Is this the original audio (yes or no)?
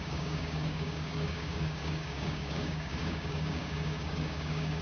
no